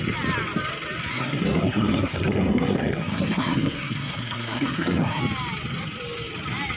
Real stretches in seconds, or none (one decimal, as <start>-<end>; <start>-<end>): 0.0-1.1; 5.2-6.8